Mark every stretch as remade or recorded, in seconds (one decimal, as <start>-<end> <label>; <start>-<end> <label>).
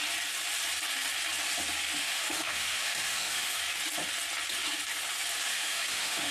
0.0-2.0 recorded; 2.0-3.6 remade; 3.6-5.5 recorded; 5.5-6.3 remade